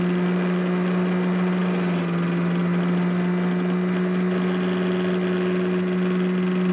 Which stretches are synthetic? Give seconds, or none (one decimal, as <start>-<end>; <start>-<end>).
none